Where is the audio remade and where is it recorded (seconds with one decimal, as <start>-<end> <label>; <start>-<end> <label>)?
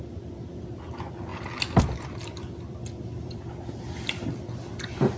0.0-5.2 recorded